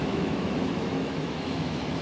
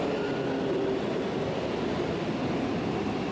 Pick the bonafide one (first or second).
second